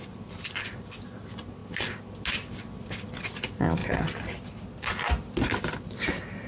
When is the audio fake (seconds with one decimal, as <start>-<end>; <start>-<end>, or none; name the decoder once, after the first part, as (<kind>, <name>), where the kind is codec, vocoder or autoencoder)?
none